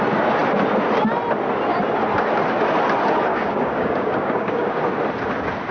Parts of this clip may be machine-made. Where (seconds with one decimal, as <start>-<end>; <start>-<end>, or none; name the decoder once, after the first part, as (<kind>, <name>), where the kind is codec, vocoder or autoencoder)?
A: 3.3-4.8 (codec, DAC)